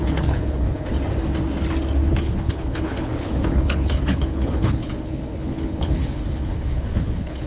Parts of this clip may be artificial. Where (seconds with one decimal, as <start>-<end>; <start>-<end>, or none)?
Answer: 0.0-0.9; 2.1-7.5